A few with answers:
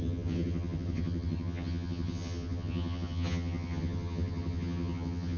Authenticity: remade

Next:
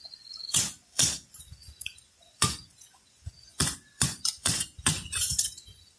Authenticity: remade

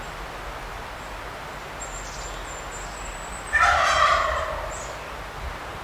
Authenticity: recorded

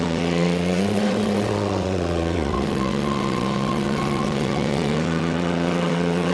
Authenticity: remade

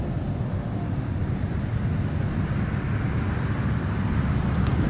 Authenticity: recorded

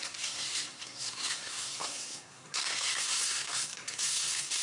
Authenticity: remade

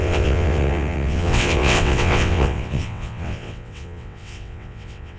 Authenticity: remade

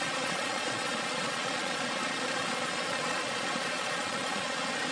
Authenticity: remade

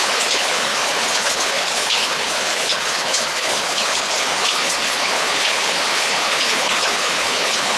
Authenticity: remade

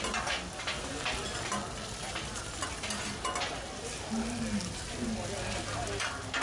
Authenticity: recorded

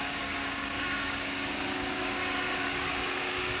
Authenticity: remade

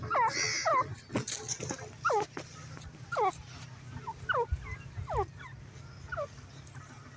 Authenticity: recorded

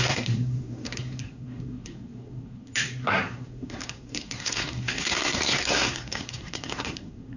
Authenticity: remade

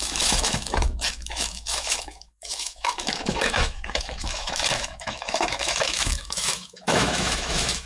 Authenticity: remade